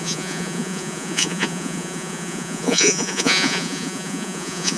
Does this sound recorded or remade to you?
remade